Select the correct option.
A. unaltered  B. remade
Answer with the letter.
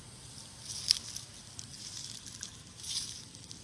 A